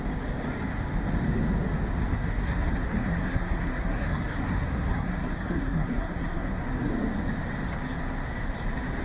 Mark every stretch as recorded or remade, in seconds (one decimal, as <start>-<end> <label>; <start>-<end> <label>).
0.0-2.1 recorded; 2.1-6.9 remade; 6.9-9.0 recorded